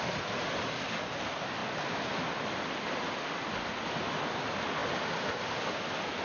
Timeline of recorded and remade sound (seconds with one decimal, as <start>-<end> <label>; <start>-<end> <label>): 0.0-6.2 recorded